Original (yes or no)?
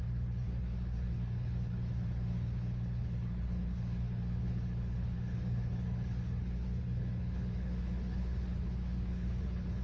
no